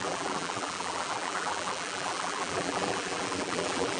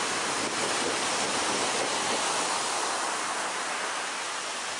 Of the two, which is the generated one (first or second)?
first